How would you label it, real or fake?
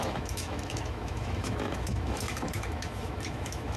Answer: fake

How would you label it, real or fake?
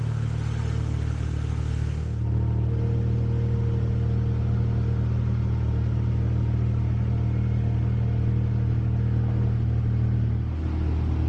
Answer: real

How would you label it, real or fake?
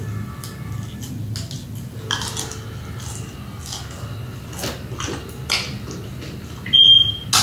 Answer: real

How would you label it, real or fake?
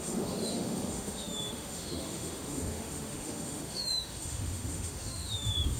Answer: fake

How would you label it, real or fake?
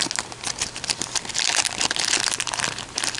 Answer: real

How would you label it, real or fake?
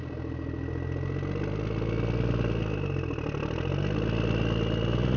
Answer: real